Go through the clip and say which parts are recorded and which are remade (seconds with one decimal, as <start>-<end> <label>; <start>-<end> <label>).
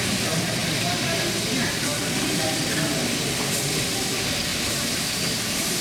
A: 0.0-4.5 recorded; 4.5-5.8 remade